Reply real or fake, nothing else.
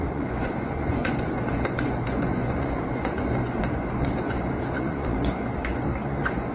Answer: fake